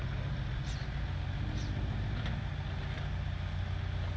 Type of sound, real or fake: real